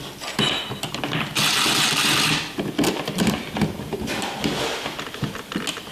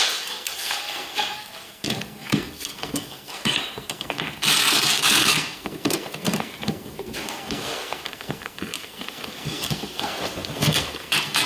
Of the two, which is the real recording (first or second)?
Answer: first